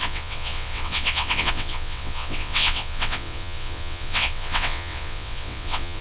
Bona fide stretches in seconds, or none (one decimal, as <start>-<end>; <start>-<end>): none